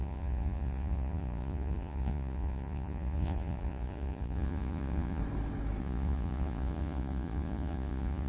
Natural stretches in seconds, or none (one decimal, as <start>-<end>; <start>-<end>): 5.2-5.8